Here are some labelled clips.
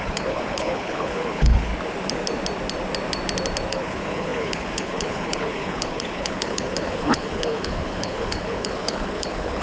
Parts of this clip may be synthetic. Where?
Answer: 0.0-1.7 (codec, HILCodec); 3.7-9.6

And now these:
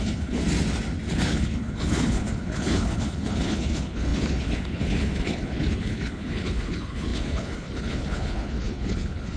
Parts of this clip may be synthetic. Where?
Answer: 0.0-0.4 (codec, HILCodec); 1.1-9.4

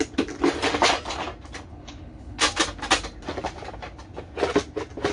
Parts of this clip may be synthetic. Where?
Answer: 1.7-2.4 (codec, HILCodec)

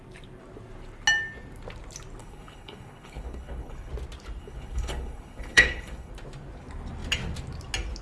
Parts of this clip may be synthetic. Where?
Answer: 2.2-3.9 (codec, HILCodec); 4.4-6.1